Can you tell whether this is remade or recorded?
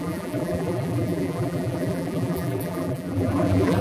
remade